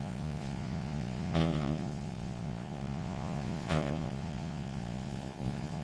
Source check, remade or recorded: remade